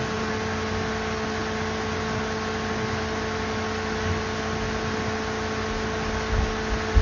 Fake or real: real